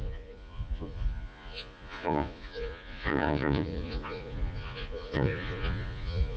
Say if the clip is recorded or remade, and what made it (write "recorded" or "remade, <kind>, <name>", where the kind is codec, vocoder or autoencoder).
remade, vocoder, Vocos